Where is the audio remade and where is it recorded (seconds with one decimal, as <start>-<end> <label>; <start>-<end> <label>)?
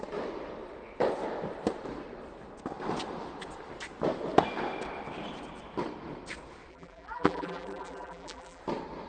0.0-6.7 recorded; 6.7-8.6 remade; 8.6-9.1 recorded